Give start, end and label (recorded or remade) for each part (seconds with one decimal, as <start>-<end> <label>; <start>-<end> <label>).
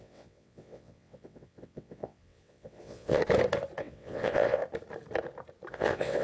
0.0-3.2 remade; 3.2-3.8 recorded; 3.8-4.6 remade; 4.6-5.7 recorded; 5.7-6.2 remade